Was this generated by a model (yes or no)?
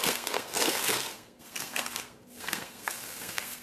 yes